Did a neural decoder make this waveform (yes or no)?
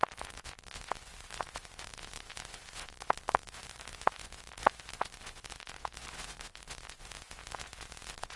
yes